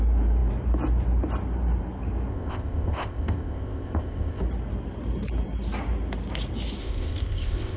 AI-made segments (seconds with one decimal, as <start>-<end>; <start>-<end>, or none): 2.3-4.4; 6.8-7.8